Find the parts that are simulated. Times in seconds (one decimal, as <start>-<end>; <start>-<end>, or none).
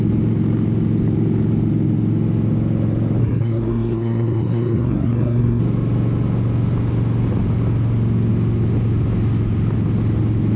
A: 3.2-5.6